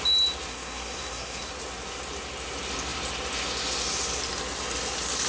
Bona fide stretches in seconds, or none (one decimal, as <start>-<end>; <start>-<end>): 0.0-0.5; 1.5-5.3